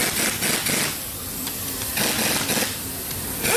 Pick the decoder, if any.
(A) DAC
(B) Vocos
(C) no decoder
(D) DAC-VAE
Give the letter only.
C